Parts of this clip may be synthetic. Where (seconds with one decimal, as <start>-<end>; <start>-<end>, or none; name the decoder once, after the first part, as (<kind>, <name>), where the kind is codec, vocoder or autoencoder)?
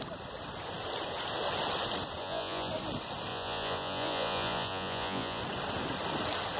2.2-2.7 (vocoder, Vocos); 3.3-5.4